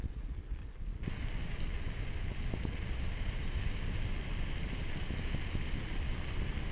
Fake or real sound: real